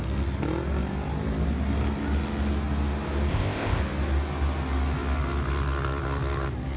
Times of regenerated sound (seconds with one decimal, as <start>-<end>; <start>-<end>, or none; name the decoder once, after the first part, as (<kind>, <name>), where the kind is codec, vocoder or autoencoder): 3.3-3.8 (codec, ZipCodec)